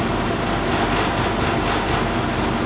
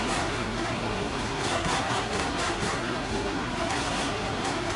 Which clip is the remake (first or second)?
second